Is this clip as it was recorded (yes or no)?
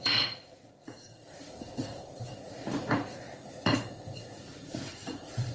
no